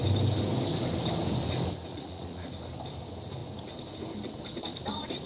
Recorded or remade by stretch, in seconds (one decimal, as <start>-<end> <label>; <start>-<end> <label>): 0.0-1.9 recorded; 1.9-2.5 remade; 2.5-5.3 recorded